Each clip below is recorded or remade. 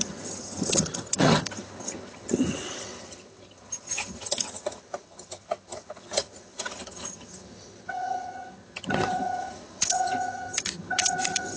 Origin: remade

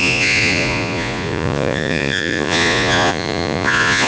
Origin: remade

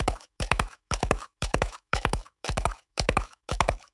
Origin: remade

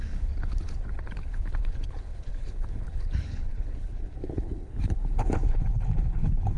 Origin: remade